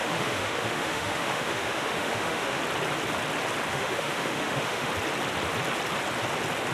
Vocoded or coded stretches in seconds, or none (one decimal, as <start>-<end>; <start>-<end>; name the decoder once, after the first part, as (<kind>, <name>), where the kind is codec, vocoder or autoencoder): 0.0-2.6 (autoencoder, DAC-VAE); 3.7-4.9